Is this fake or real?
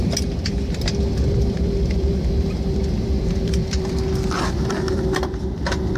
fake